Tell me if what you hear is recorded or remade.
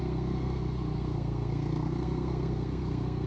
remade